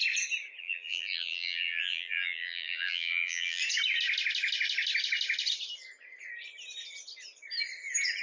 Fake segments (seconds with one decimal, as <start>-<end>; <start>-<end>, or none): 0.6-3.6

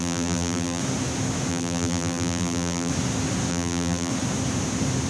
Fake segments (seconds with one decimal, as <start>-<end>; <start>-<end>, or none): 0.0-0.8; 1.5-2.9; 3.5-4.1

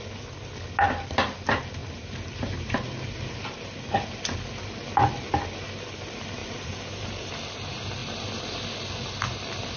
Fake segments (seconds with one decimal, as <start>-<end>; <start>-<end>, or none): 1.8-3.6; 6.4-7.3

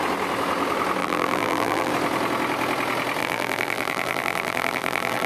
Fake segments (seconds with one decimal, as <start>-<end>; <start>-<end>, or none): 1.0-1.9; 3.2-5.3

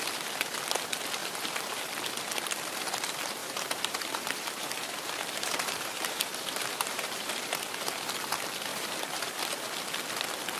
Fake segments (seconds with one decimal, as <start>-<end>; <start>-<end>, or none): 1.2-1.9; 3.4-7.3; 8.7-9.4

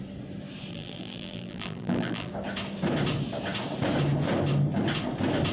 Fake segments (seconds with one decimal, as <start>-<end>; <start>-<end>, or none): 0.7-2.3

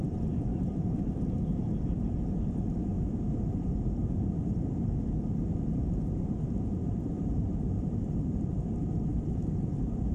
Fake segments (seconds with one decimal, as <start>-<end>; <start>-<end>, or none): 0.0-10.1

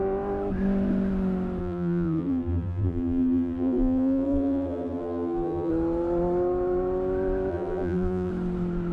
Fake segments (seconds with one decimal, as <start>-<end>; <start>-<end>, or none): 1.6-5.7; 7.5-8.3